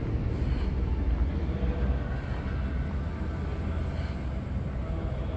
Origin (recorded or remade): recorded